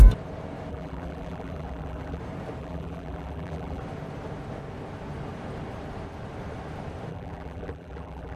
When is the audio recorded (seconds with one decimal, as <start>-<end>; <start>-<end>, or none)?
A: 0.0-0.7; 2.2-2.6; 3.8-7.1